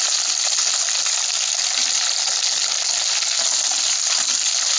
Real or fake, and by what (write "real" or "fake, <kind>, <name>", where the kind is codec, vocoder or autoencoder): real